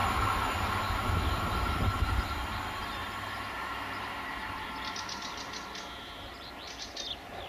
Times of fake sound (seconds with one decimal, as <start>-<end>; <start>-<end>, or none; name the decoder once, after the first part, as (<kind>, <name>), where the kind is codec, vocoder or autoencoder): none